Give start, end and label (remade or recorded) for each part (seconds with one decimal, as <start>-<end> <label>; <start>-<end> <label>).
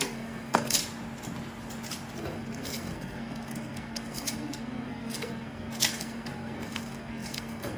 0.0-0.8 remade; 0.8-2.2 recorded; 2.2-7.8 remade